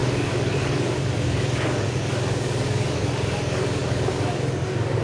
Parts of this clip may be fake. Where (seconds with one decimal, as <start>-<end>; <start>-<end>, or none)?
0.0-5.0

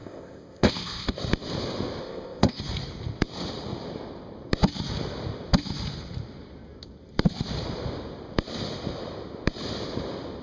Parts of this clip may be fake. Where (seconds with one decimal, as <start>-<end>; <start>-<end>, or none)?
0.0-1.2; 2.0-2.6

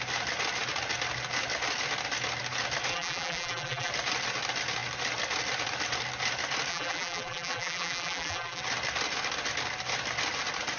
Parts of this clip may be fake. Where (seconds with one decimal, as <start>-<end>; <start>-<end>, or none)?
2.9-3.9; 6.7-8.6

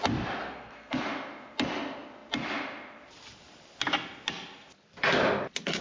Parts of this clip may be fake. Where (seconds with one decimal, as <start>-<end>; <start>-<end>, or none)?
0.4-1.0

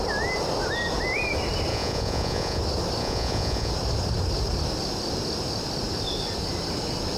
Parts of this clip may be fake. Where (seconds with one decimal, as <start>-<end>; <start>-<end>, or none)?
1.7-2.6; 3.0-3.7